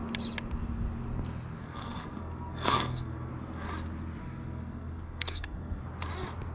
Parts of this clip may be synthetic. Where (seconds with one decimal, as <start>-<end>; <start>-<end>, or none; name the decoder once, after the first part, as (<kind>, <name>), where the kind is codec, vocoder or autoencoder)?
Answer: 1.6-3.3 (codec, SNAC); 4.2-5.8